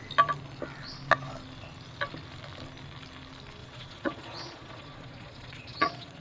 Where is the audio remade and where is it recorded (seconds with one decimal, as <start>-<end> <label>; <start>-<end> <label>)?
0.0-3.6 recorded; 3.6-6.2 remade